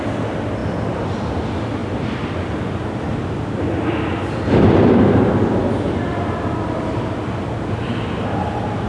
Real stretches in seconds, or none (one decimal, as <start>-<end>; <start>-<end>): 0.0-8.9